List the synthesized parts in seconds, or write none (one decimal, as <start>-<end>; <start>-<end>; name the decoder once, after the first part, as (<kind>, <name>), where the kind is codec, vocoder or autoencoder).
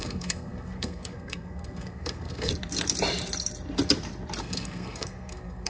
0.0-2.5 (codec, SNAC); 4.4-5.7